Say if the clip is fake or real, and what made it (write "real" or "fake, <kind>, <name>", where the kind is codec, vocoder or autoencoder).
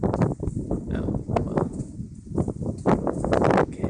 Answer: real